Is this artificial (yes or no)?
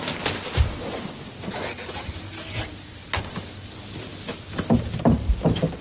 no